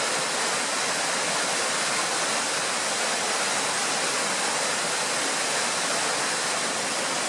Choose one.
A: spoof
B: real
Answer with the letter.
B